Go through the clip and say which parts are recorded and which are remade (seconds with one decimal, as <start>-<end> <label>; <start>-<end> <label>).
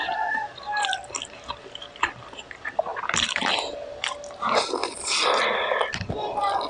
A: 0.0-2.9 remade; 2.9-3.9 recorded; 3.9-6.7 remade